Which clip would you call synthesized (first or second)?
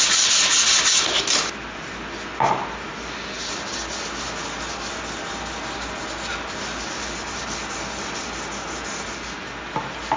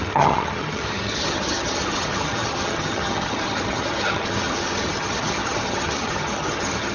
second